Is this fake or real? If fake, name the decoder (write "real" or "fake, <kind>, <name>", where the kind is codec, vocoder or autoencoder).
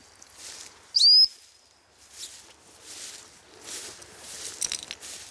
real